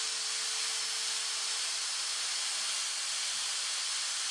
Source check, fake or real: real